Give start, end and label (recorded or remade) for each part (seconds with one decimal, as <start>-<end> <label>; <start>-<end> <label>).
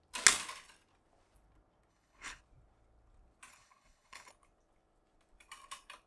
0.0-1.9 recorded; 1.9-2.4 remade; 2.4-3.5 recorded; 3.5-4.3 remade; 4.3-6.1 recorded